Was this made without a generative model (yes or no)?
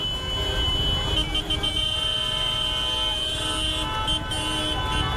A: yes